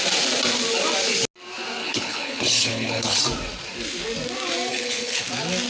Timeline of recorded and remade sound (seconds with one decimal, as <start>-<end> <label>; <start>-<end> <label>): 0.0-1.8 recorded; 1.8-3.2 remade; 3.2-4.7 recorded; 4.7-5.2 remade; 5.2-5.7 recorded